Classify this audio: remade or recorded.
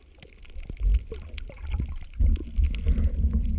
recorded